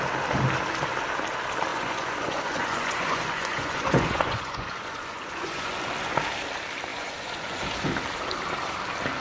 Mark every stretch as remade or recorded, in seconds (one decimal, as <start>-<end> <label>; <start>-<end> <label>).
0.0-1.7 recorded; 1.7-5.8 remade; 5.8-6.9 recorded; 6.9-7.6 remade; 7.6-9.2 recorded